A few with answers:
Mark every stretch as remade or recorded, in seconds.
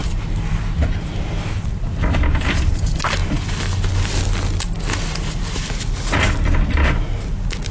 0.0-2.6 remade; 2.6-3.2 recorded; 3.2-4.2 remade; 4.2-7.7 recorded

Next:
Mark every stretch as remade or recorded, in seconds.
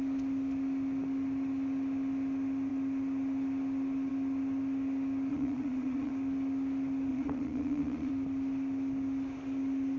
0.0-5.3 recorded; 5.3-6.1 remade; 6.1-7.1 recorded; 7.1-8.1 remade; 8.1-10.0 recorded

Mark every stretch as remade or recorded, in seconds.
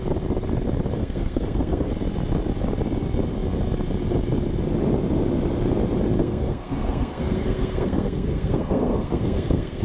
0.0-1.0 recorded; 1.0-1.9 remade; 1.9-6.2 recorded; 6.2-9.8 remade